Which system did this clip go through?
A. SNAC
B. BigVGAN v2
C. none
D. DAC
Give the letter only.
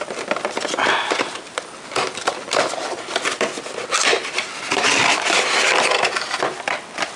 C